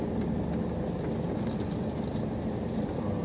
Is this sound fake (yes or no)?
no